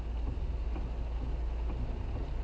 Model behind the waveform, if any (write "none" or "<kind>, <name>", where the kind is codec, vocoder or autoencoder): none